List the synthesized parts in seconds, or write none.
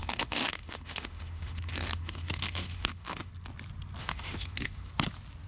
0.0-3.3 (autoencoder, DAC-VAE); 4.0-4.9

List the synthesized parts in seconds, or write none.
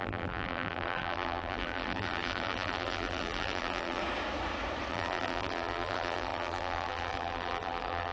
0.0-4.0 (vocoder, BigVGAN v2); 4.9-8.1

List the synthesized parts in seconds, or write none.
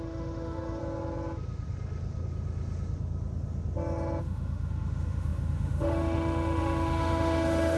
0.0-0.8 (autoencoder, DAC-VAE); 4.2-7.8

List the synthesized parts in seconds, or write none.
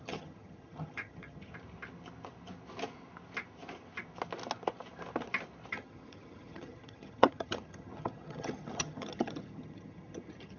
0.0-1.5 (vocoder, HiFi-GAN); 5.7-10.6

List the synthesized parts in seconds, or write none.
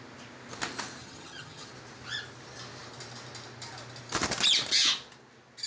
1.0-1.7 (vocoder, HiFi-GAN)